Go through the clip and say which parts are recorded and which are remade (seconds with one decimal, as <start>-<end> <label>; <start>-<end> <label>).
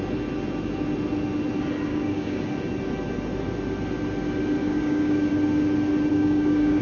0.0-1.9 recorded; 1.9-2.4 remade; 2.4-4.6 recorded; 4.6-5.3 remade; 5.3-6.1 recorded; 6.1-6.8 remade